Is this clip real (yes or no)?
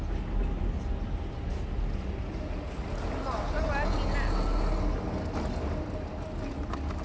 yes